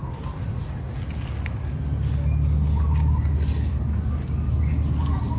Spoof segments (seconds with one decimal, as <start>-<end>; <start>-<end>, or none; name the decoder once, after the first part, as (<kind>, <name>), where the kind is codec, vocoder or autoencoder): none